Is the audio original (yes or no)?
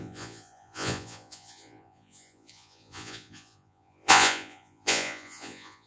no